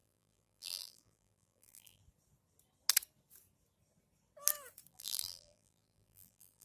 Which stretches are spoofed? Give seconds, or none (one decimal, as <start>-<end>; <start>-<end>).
0.0-2.0; 4.9-6.6